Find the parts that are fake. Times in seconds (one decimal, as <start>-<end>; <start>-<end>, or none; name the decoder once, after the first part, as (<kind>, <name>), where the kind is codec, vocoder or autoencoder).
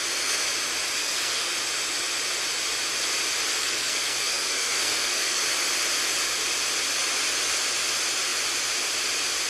1.0-1.5 (codec, SNAC); 3.5-5.4